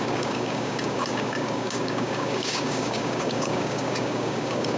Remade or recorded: remade